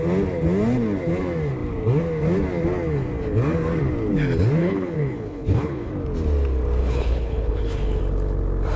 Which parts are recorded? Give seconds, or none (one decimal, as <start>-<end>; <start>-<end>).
0.0-4.6; 5.9-6.8; 8.0-8.8